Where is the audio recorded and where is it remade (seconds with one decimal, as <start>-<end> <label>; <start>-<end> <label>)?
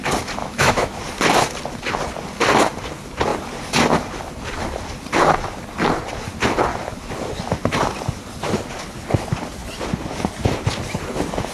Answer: 0.0-0.4 recorded; 0.4-1.0 remade; 1.0-11.5 recorded